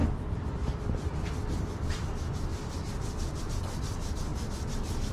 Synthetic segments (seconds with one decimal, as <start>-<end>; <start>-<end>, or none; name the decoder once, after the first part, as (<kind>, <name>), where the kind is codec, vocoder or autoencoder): 0.0-2.1 (vocoder, BigVGAN v2); 2.5-3.4